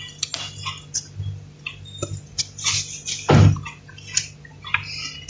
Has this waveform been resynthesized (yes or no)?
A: no